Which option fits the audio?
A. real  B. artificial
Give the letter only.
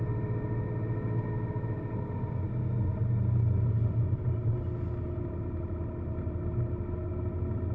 A